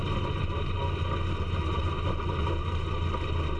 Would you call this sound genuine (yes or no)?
yes